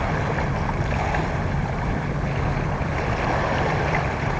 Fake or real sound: real